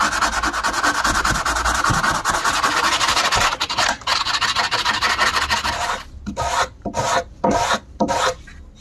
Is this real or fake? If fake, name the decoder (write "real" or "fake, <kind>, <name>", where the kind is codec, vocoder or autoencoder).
real